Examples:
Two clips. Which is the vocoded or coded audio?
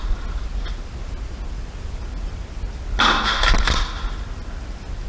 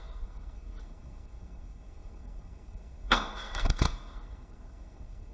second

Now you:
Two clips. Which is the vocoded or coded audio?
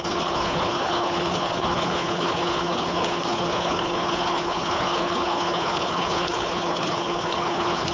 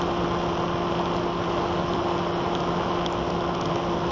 first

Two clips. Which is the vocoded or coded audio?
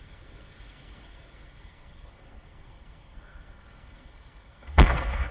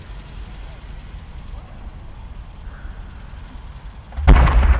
first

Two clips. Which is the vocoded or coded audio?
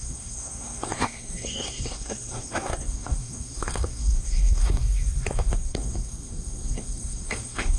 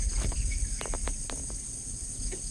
first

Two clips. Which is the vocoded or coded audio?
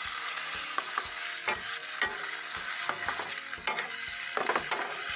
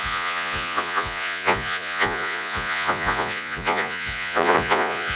second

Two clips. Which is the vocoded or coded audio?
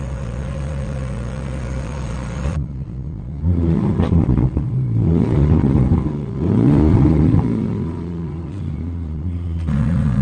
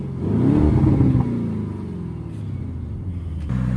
first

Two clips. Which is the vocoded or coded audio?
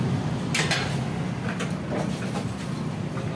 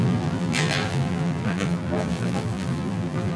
second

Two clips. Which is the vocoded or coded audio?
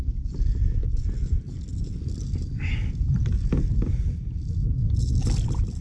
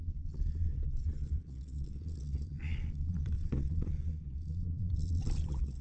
second